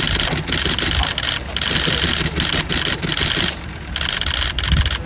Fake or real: real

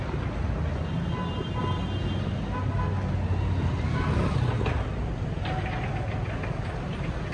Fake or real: real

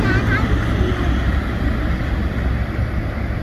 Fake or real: real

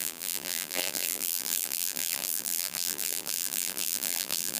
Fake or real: fake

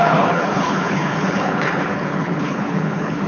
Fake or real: fake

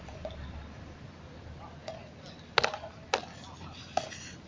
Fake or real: real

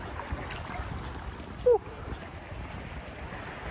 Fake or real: real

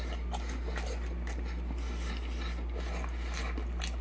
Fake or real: real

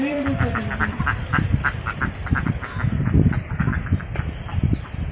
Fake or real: fake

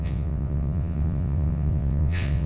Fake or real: fake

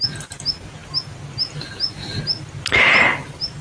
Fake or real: real